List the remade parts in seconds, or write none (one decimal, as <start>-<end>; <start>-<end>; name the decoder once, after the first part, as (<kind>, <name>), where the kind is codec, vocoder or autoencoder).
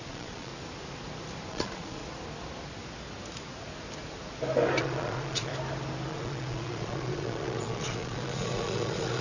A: 0.0-0.5 (vocoder, Vocos); 1.5-2.0; 4.8-5.5; 6.1-9.2